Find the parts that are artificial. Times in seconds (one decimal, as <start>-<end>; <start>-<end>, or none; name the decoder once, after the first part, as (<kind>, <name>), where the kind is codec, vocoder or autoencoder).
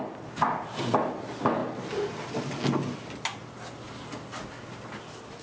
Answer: none